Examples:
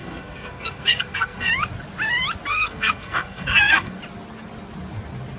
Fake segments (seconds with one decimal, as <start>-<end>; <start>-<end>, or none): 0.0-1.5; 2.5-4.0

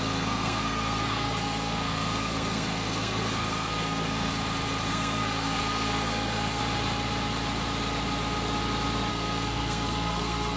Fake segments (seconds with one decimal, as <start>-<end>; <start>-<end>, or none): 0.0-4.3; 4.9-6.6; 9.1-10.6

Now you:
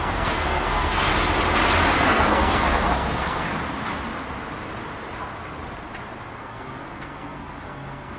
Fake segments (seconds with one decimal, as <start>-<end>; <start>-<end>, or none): 0.0-1.1; 1.9-3.5; 6.4-8.2